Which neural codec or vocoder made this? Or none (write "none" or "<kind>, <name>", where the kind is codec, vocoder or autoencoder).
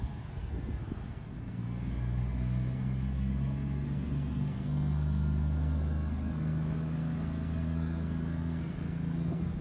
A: codec, SNAC